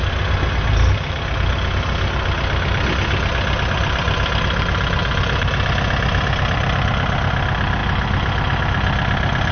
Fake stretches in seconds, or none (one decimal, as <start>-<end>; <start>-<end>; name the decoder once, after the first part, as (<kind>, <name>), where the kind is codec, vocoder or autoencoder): none